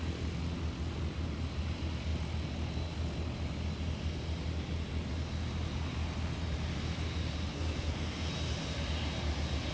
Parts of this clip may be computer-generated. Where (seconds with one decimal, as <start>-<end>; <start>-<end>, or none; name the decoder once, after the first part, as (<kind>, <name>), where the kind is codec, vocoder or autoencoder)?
7.5-8.3 (codec, SNAC)